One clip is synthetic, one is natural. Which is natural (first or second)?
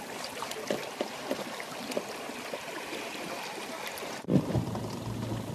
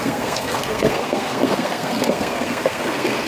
first